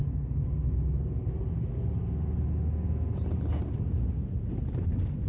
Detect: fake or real real